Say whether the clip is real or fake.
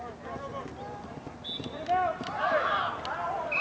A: real